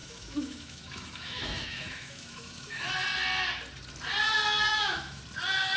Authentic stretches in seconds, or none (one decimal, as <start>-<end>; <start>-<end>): 2.9-4.7; 5.2-5.8